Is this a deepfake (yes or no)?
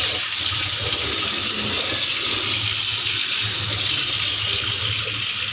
no